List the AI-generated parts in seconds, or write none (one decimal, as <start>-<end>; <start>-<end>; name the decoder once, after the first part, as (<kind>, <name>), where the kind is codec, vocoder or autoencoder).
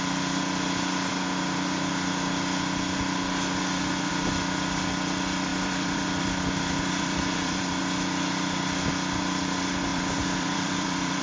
5.5-7.8 (vocoder, BigVGAN v2); 9.9-11.2